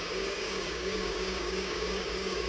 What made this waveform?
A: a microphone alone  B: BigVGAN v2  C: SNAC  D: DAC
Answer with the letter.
D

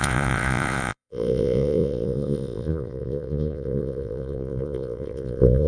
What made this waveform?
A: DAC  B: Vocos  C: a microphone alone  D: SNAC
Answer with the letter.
B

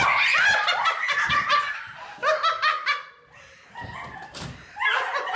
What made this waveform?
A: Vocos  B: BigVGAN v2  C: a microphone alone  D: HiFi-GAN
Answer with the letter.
C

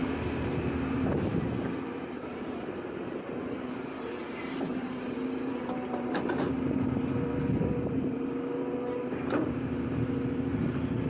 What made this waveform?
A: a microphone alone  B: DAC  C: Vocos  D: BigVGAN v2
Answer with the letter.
D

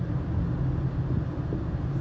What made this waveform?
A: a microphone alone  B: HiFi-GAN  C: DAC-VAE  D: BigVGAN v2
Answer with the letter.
A